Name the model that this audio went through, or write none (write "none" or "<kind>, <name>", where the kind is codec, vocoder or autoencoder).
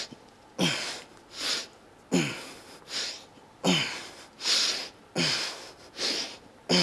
none